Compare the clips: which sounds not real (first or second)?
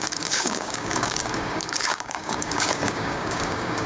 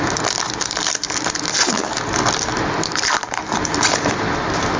first